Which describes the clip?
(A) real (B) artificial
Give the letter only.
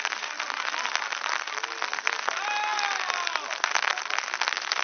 A